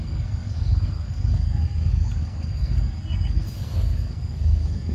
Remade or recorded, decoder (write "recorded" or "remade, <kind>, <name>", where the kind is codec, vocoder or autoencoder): remade, codec, SNAC